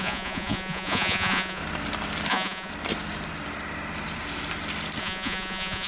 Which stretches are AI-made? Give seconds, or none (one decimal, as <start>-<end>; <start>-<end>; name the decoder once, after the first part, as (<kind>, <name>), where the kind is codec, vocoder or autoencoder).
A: 0.0-1.6 (vocoder, Vocos); 2.3-2.7; 5.0-5.9